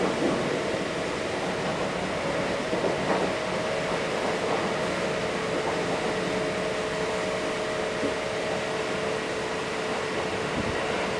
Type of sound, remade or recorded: recorded